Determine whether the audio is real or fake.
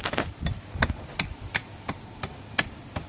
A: real